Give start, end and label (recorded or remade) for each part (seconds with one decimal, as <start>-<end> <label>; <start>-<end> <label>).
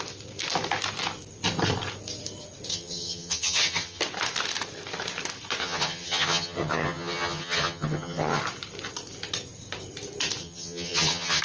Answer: 0.0-2.7 recorded; 2.7-4.0 remade; 4.0-5.6 recorded; 5.6-8.4 remade; 8.4-10.4 recorded; 10.4-11.4 remade